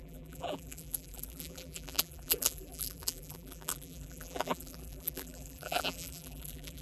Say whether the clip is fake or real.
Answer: fake